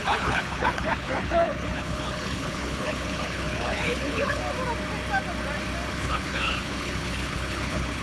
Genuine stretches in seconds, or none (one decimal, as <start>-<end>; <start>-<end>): 4.4-5.9